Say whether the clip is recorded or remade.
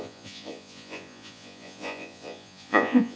remade